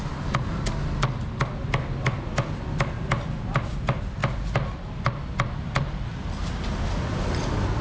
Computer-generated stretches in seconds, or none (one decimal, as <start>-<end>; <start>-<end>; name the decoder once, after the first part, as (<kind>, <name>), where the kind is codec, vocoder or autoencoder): none